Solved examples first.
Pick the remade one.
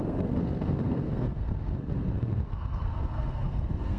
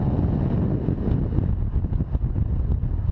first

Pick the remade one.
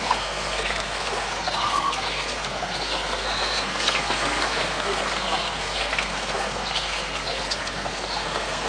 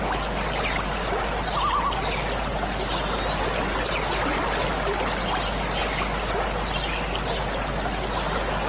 first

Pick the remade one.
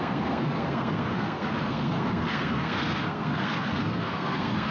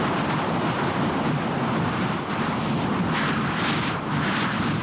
first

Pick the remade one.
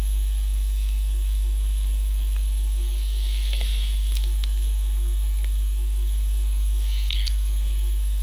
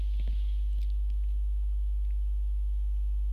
first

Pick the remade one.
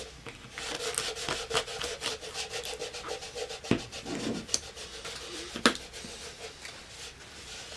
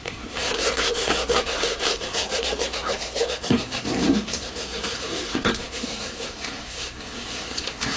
second